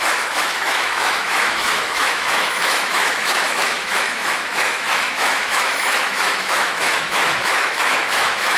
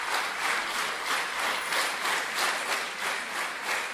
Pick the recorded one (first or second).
second